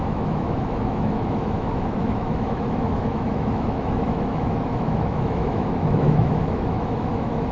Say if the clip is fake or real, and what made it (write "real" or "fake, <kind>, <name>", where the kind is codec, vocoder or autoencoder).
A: fake, autoencoder, DAC-VAE